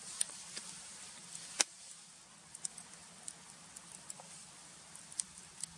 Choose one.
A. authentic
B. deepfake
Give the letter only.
A